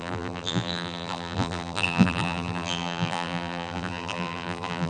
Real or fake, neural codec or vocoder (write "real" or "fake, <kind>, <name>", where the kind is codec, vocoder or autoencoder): fake, vocoder, BigVGAN v2